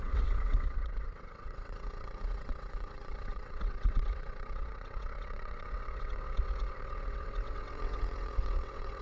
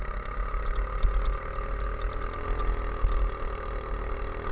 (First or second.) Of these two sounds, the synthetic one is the first